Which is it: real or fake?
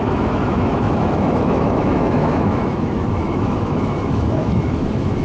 fake